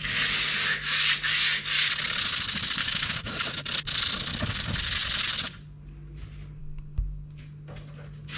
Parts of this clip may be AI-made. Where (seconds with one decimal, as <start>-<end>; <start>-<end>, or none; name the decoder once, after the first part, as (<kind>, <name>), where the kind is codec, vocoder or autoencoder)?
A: 2.8-3.4 (codec, DAC)